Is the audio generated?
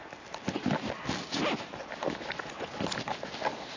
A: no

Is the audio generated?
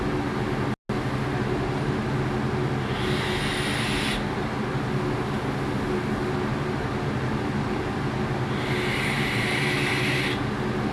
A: no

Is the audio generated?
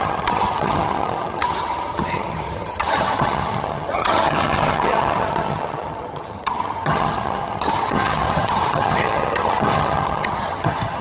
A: yes